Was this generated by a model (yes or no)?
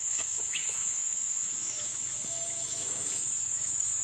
yes